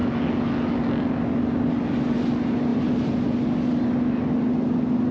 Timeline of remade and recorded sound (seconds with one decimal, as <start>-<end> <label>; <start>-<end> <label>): 0.0-5.1 recorded